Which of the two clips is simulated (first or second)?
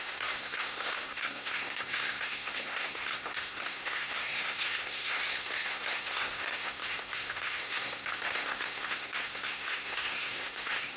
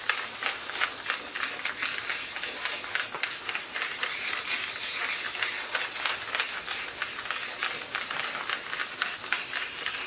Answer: first